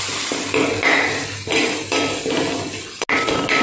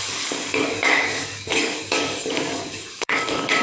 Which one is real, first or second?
first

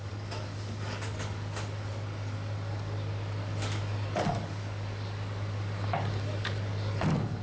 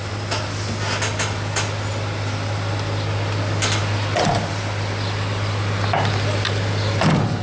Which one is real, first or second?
second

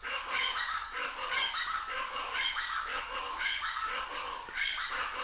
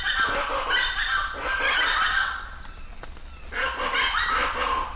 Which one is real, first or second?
second